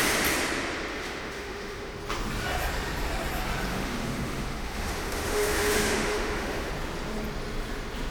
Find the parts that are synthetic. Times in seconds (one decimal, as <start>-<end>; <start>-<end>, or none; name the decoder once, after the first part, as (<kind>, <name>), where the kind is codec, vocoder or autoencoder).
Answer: 0.9-2.0 (autoencoder, DAC-VAE); 3.7-6.7